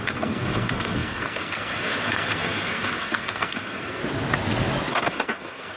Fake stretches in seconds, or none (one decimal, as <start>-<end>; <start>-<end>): 0.0-4.0; 4.9-5.8